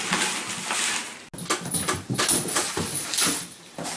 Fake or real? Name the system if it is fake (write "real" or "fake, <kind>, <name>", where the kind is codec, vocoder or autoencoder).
real